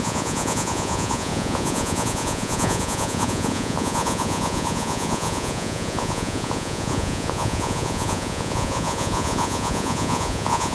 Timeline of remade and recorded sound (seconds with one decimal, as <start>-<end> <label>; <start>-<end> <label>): 0.0-10.7 remade